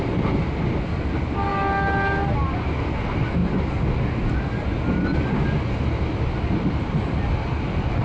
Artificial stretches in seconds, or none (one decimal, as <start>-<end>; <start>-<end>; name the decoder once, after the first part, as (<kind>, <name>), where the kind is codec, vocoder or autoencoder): none